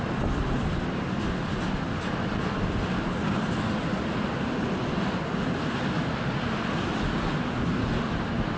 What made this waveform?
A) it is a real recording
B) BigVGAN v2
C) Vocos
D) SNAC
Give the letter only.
A